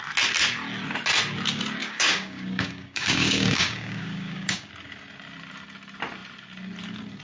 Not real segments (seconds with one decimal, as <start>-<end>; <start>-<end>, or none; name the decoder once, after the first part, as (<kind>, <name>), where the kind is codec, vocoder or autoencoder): 1.8-4.7 (codec, DAC)